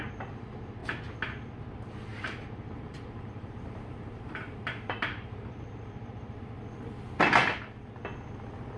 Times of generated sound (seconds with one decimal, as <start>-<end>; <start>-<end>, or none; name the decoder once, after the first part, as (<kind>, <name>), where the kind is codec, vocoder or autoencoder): 2.1-6.6 (vocoder, BigVGAN v2)